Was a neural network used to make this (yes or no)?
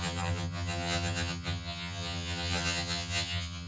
yes